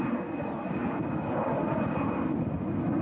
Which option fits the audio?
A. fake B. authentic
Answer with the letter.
B